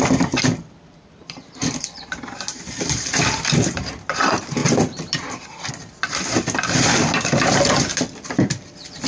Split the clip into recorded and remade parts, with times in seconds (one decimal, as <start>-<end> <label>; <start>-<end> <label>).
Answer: 0.0-9.1 recorded